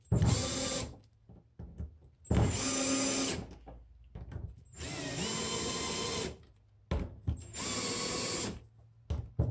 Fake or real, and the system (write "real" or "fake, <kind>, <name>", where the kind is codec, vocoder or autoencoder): real